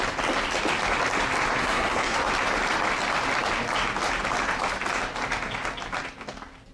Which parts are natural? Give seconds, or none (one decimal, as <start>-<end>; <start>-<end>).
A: 0.0-1.6; 2.2-6.7